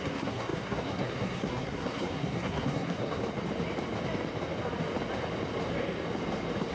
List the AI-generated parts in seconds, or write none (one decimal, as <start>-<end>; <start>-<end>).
0.0-3.2